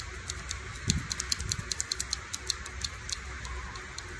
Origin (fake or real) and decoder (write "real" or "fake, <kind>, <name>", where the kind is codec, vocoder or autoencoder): real